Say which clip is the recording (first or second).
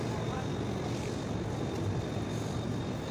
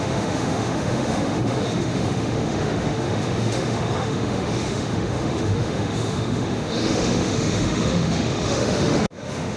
first